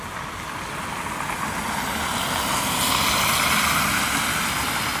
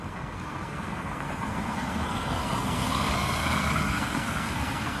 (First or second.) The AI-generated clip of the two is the second